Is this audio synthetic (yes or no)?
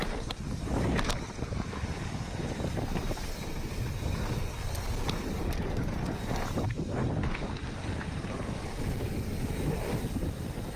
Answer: no